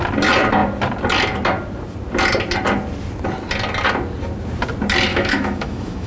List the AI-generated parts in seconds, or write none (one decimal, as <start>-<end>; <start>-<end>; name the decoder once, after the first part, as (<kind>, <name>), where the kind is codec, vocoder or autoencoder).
5.1-6.1 (autoencoder, DAC-VAE)

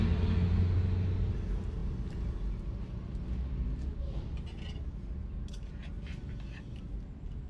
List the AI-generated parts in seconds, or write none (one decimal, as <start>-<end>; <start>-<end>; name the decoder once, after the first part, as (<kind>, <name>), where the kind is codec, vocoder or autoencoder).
none